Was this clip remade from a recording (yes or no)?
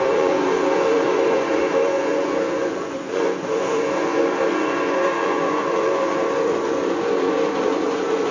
yes